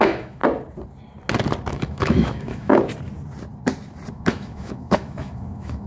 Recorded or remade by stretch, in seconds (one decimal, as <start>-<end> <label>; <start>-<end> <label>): 0.0-0.4 remade; 0.4-1.7 recorded; 1.7-2.7 remade; 2.7-4.1 recorded; 4.1-5.9 remade